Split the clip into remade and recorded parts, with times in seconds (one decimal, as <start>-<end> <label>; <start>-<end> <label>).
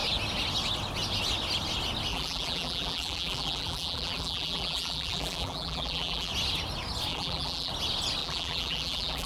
0.0-2.1 recorded; 2.1-6.3 remade; 6.3-7.1 recorded; 7.1-7.7 remade; 7.7-8.2 recorded; 8.2-9.3 remade